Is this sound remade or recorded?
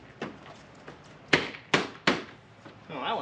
recorded